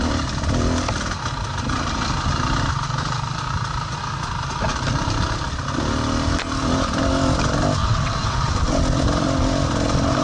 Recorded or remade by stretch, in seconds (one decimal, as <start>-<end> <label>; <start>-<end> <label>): 0.0-7.8 recorded; 7.8-8.5 remade; 8.5-10.2 recorded